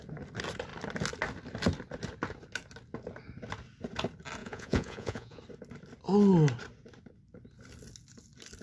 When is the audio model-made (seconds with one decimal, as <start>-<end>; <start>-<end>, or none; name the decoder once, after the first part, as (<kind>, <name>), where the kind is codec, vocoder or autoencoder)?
4.4-5.4 (vocoder, Vocos)